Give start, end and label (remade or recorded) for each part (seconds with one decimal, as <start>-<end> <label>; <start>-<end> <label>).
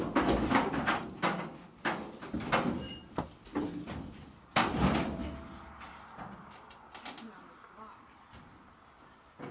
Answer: 0.0-5.2 remade; 5.2-5.9 recorded; 5.9-9.5 remade